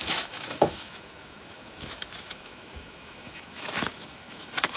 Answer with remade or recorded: remade